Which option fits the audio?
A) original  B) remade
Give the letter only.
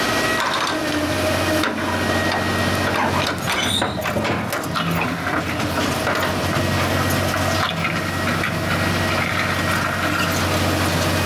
A